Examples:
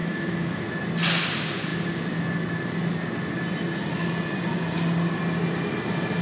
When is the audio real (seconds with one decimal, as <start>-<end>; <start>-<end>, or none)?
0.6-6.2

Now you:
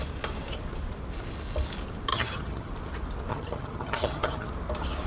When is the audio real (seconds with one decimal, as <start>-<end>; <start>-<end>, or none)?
0.0-2.1; 2.7-3.3; 4.5-5.1

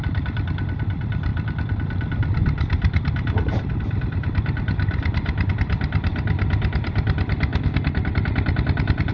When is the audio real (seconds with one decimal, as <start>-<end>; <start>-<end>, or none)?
1.3-5.5; 7.5-9.1

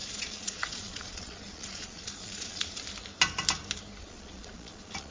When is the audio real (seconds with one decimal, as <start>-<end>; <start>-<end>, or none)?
2.8-4.0